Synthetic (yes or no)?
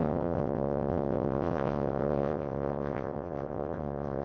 yes